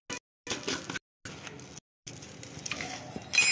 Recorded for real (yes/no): yes